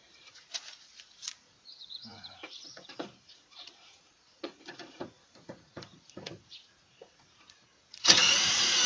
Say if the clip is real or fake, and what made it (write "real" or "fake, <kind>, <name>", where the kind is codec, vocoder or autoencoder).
fake, vocoder, Vocos